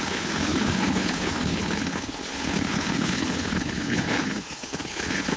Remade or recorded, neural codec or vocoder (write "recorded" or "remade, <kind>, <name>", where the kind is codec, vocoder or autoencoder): remade, codec, HILCodec